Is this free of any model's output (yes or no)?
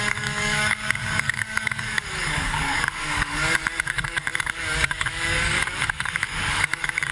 no